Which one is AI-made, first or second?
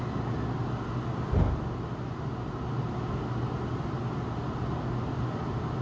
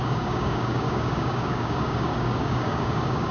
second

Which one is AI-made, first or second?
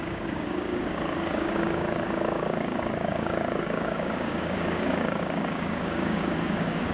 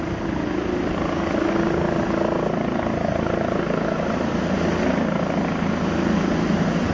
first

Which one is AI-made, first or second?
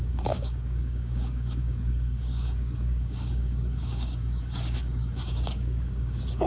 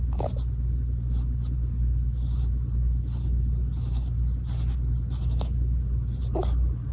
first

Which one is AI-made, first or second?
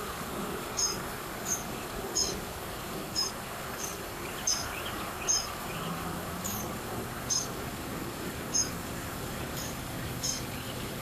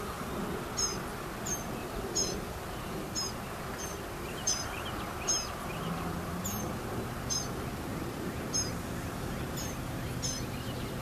first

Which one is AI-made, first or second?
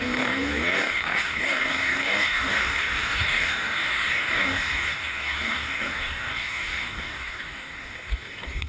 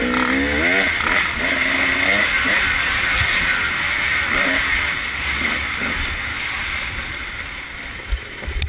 first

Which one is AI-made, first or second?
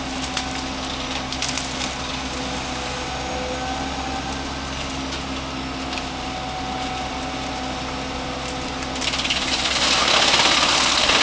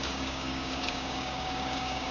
second